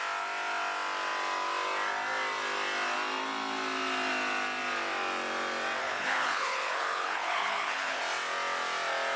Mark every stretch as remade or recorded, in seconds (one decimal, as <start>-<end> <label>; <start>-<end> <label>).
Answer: 0.0-5.8 recorded; 5.8-8.0 remade; 8.0-9.2 recorded